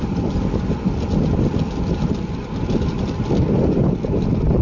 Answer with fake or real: real